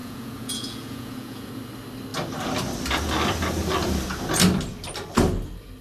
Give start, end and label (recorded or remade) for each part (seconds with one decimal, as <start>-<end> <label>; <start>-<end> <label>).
0.0-1.5 remade; 1.5-5.8 recorded